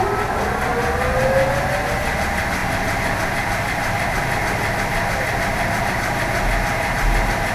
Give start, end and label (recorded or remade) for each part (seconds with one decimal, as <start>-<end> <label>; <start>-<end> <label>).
0.0-2.6 recorded; 2.6-5.8 remade; 5.8-7.5 recorded